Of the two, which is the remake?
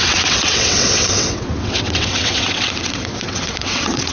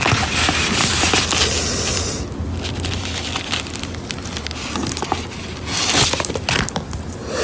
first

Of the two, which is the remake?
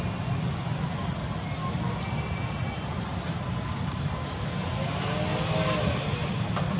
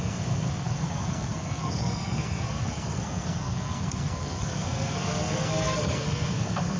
second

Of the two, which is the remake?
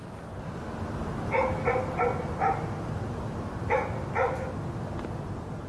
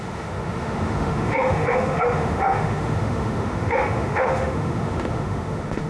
second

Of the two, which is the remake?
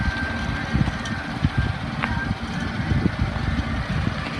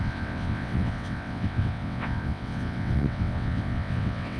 second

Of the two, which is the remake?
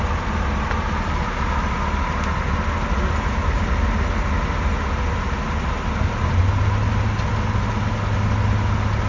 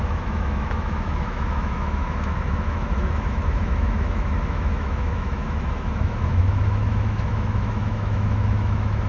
second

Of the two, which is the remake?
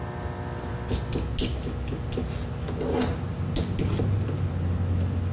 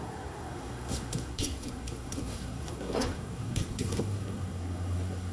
second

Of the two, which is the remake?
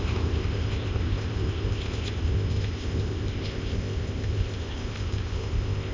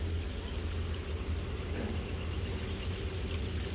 first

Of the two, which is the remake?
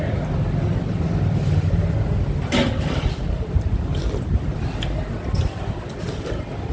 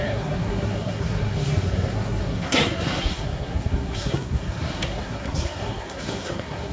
second